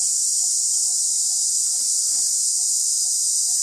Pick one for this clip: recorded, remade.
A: recorded